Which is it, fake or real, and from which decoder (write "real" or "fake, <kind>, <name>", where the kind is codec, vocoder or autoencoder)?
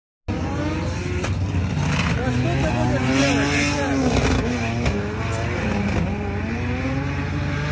real